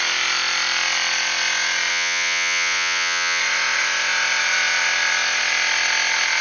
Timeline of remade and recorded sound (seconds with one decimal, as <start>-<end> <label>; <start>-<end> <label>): 0.0-1.9 recorded; 1.9-3.4 remade; 3.4-6.4 recorded